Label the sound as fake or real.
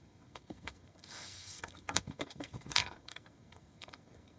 fake